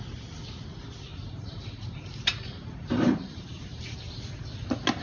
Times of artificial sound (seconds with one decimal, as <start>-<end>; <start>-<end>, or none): 1.1-3.8